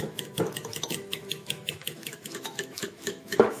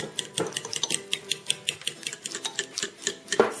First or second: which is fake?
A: first